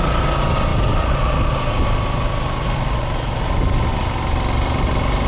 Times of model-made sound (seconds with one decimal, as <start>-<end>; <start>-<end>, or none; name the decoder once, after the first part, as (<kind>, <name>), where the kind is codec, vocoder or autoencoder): none